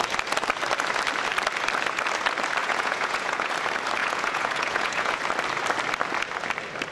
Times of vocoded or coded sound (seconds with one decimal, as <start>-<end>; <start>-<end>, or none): 2.6-3.5; 4.0-5.2